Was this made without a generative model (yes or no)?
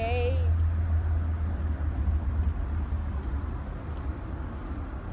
yes